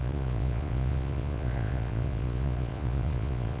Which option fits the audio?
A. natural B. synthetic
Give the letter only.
B